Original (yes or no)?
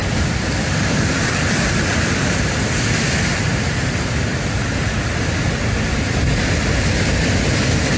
yes